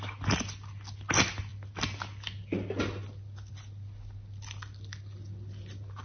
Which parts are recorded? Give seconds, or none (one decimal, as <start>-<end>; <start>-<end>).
0.0-6.0